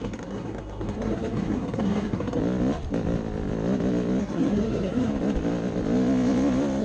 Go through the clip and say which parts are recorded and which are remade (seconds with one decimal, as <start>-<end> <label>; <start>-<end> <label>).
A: 0.0-2.4 remade; 2.4-4.2 recorded; 4.2-5.1 remade; 5.1-6.8 recorded